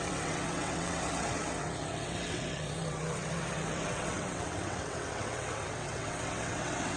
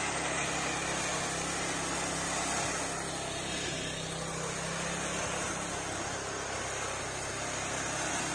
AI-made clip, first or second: first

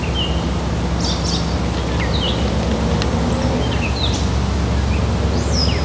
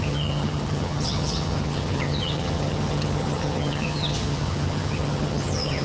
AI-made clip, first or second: second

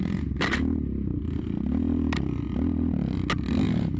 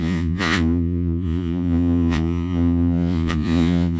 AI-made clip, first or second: second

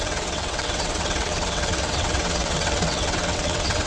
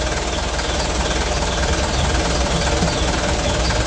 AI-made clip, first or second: first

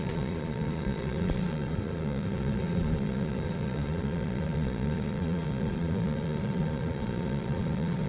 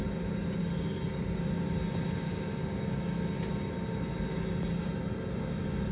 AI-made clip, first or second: first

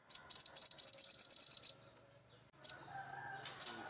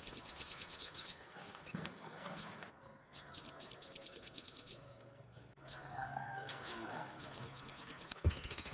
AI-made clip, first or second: second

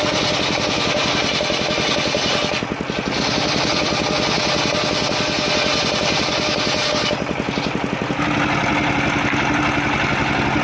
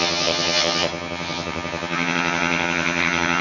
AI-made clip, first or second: second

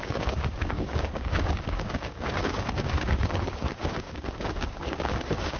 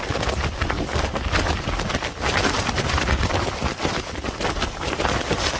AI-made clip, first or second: first